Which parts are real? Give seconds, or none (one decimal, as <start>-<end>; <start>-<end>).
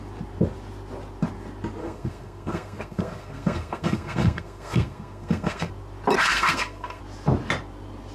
0.0-1.8; 5.7-6.2; 7.0-8.1